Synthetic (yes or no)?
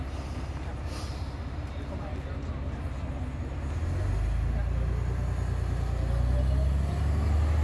no